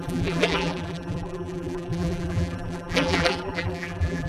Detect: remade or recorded remade